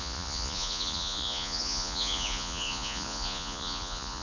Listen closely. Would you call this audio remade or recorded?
remade